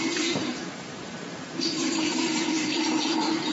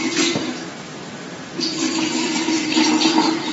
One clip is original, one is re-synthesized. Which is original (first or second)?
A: second